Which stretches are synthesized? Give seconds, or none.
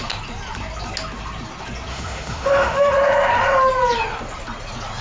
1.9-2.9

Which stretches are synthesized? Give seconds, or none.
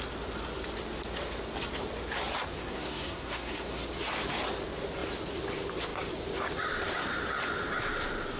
2.6-3.8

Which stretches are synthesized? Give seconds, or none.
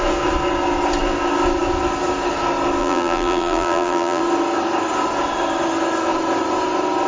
2.8-4.2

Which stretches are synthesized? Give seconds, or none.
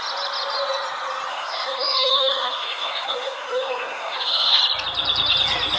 1.3-4.6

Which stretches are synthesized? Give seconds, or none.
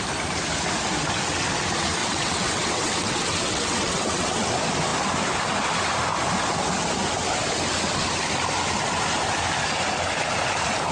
2.0-4.5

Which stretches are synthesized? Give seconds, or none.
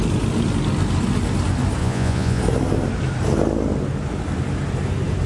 1.8-2.4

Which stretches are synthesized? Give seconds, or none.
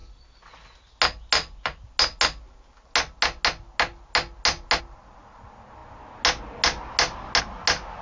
none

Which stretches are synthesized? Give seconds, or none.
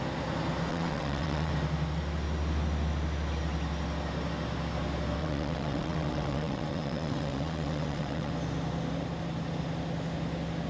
0.7-1.5; 5.2-8.3